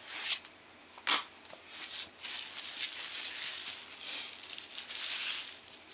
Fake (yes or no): no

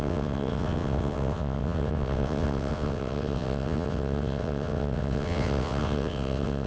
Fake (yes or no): yes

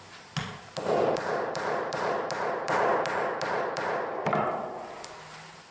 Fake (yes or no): no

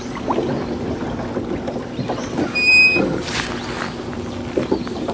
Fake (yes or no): no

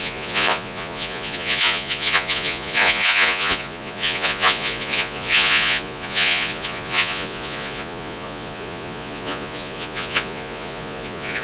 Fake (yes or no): yes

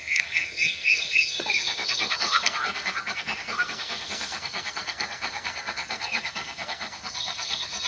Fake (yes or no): yes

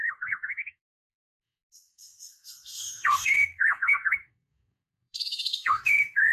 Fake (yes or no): yes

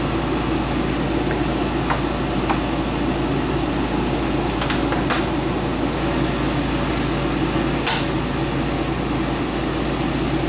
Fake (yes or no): no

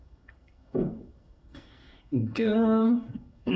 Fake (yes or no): yes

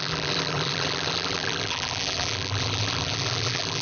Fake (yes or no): yes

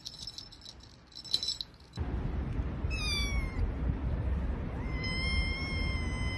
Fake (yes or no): no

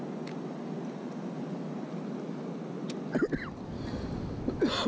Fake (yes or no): no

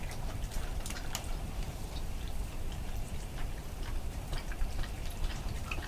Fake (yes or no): yes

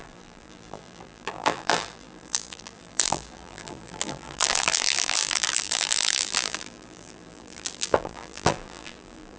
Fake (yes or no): yes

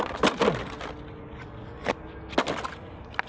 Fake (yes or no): no